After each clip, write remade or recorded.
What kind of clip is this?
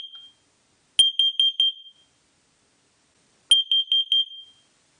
recorded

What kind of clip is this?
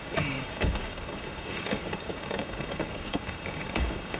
remade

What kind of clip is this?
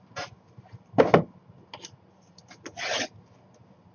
recorded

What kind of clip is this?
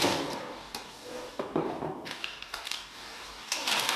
remade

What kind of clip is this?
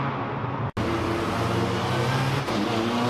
recorded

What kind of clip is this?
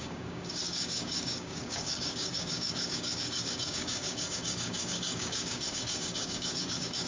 remade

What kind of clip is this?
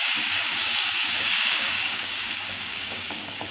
remade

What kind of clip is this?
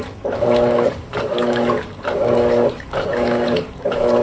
remade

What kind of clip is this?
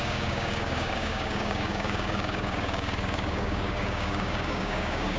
remade